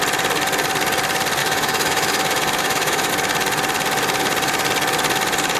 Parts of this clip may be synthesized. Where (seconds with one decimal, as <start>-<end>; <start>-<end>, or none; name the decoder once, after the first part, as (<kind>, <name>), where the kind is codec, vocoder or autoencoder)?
1.4-3.1 (autoencoder, DAC-VAE)